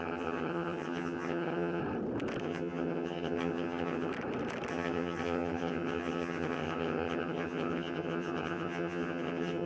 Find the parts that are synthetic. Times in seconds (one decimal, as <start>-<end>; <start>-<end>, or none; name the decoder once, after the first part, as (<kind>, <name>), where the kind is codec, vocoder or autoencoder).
0.0-1.8 (vocoder, HiFi-GAN); 2.4-4.1; 4.7-9.7